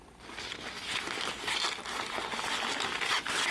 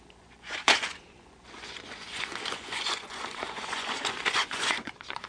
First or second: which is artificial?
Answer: second